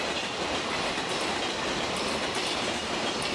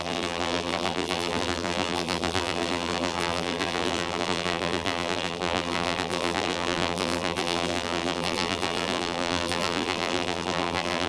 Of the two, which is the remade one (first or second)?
second